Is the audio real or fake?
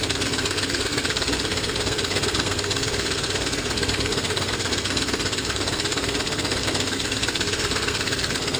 fake